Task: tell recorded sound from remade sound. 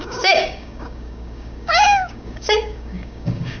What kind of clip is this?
remade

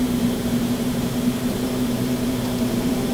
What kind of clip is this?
remade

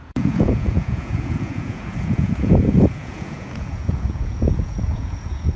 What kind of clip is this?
remade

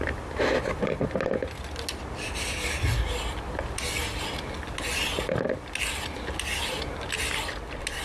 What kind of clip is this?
recorded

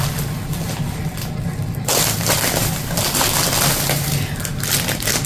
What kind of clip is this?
recorded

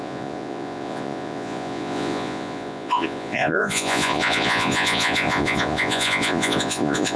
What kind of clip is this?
remade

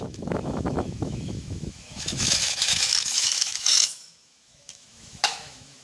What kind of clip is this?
remade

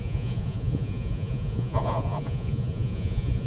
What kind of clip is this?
remade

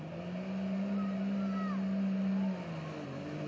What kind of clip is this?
recorded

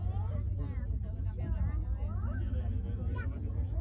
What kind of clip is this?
recorded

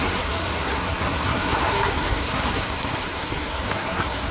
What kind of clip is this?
remade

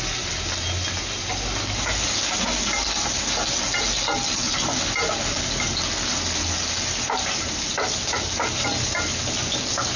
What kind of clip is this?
recorded